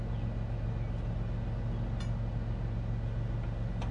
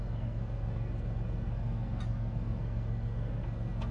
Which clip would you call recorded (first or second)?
first